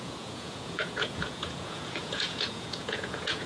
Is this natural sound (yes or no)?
no